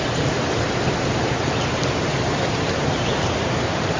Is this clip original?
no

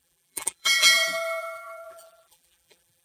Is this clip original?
no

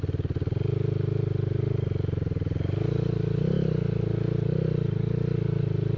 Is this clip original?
yes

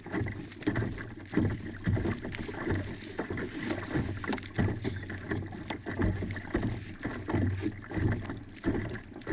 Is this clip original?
yes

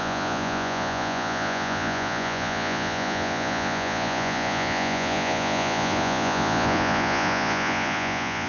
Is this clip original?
no